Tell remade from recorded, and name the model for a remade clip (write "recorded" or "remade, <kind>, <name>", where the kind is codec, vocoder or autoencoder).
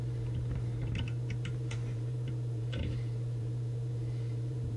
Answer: remade, vocoder, BigVGAN v2